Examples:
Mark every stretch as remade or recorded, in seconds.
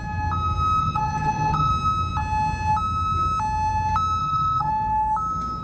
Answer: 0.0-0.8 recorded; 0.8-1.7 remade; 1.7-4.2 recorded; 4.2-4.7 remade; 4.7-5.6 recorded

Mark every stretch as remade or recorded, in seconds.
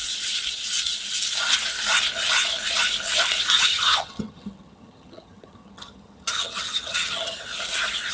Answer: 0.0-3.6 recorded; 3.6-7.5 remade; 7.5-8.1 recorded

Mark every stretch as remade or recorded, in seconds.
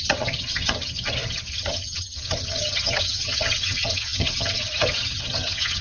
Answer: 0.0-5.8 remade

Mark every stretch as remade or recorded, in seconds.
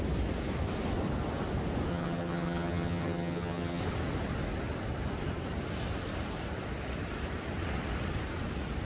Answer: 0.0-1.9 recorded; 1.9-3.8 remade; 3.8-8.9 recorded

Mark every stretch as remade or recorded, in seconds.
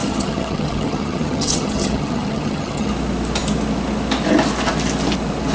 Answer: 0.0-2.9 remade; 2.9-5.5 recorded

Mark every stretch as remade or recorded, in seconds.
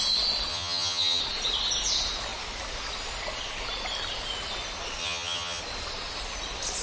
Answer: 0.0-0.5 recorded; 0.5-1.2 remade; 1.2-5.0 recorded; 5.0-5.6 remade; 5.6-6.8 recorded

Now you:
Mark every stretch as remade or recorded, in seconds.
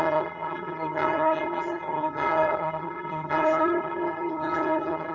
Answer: 0.0-5.1 remade